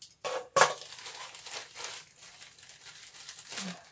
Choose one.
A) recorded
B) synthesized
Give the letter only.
A